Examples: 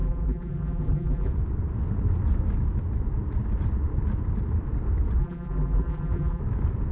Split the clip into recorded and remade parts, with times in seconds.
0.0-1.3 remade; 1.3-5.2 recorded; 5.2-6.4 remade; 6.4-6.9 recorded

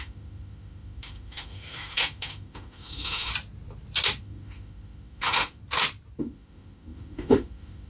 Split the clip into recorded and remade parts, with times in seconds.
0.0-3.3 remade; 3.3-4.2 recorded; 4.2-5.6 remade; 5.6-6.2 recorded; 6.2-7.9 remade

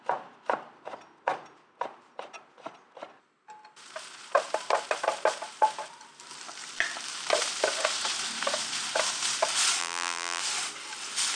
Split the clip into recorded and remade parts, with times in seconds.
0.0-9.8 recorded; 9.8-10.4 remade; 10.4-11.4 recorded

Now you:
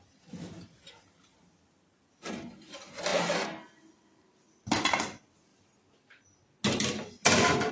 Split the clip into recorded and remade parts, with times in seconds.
0.0-7.7 recorded

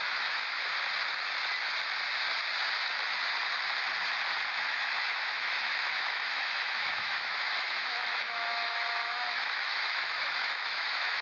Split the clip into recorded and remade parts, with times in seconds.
0.0-0.7 remade; 0.7-4.5 recorded; 4.5-11.2 remade

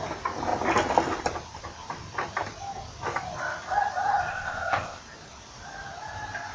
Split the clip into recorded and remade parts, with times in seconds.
0.0-4.3 recorded; 4.3-5.0 remade; 5.0-6.5 recorded